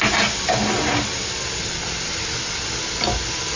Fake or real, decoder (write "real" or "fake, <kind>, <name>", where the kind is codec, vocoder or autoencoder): real